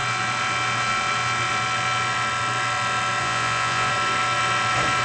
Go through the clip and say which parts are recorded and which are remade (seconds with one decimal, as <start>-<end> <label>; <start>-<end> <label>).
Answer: 0.0-3.2 recorded; 3.2-3.9 remade; 3.9-5.0 recorded